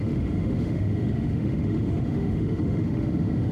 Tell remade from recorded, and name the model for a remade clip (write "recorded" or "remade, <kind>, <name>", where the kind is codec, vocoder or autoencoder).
remade, autoencoder, DAC-VAE